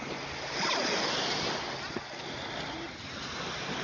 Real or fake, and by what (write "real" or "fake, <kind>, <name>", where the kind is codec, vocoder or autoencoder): real